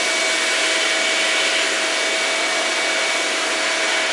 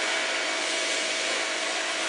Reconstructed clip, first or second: second